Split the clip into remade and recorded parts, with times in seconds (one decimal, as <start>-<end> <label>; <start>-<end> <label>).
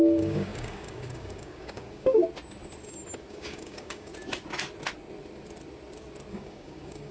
0.0-2.2 remade; 2.2-3.3 recorded; 3.3-4.1 remade; 4.1-6.3 recorded; 6.3-7.1 remade